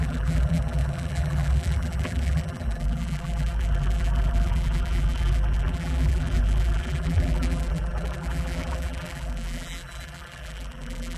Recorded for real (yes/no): no